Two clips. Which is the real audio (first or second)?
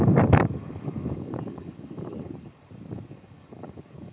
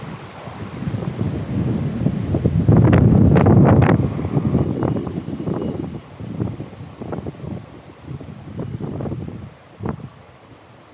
second